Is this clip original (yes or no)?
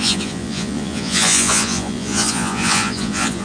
no